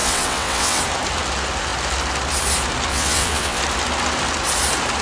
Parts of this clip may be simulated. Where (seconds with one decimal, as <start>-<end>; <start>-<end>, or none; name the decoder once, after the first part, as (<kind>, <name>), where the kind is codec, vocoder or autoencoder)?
0.0-0.8 (vocoder, WaveNeXt); 2.9-3.6